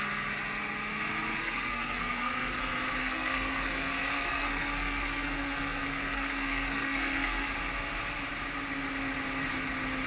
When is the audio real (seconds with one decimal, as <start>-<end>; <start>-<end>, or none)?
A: 0.0-1.4; 2.6-3.0; 7.5-10.1